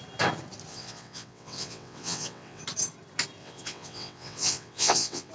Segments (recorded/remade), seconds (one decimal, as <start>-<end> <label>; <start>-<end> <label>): 0.0-0.7 recorded; 0.7-2.6 remade; 2.6-3.4 recorded; 3.4-5.3 remade